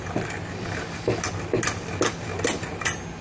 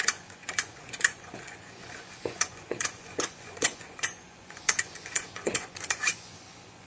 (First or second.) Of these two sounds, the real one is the first